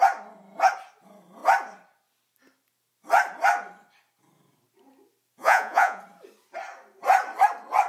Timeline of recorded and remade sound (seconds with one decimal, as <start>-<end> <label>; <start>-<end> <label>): 0.0-5.4 recorded; 5.4-6.0 remade; 6.0-7.9 recorded